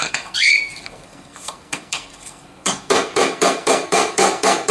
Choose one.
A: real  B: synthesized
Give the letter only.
B